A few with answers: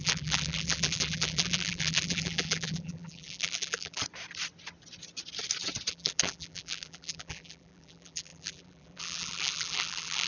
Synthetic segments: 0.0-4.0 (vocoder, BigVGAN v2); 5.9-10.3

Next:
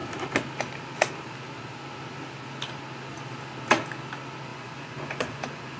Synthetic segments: 4.5-5.8 (vocoder, Vocos)